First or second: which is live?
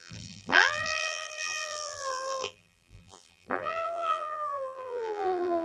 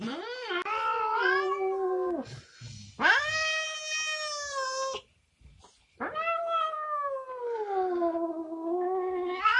second